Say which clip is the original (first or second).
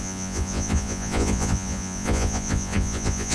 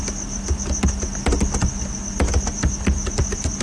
second